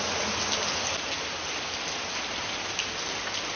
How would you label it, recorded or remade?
recorded